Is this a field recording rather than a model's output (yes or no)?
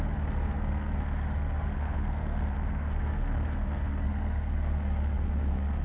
no